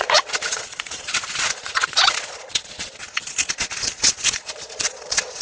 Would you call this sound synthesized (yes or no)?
yes